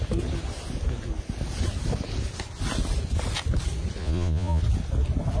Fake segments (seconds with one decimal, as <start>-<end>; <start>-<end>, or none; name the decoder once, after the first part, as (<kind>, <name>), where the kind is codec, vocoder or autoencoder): 4.0-4.6 (vocoder, Vocos)